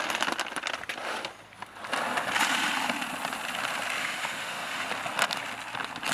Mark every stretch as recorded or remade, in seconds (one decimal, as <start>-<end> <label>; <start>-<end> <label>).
0.0-4.0 recorded; 4.0-4.9 remade; 4.9-6.1 recorded